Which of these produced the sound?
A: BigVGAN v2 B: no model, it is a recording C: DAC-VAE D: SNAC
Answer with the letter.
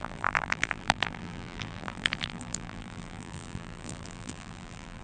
A